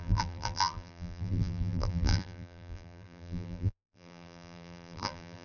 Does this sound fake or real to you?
fake